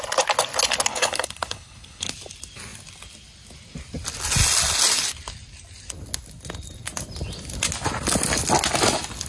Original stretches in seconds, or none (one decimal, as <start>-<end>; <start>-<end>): 0.0-0.9; 2.1-9.3